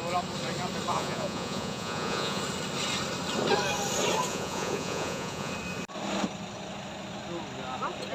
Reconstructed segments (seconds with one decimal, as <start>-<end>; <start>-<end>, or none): 0.9-2.4; 4.3-5.5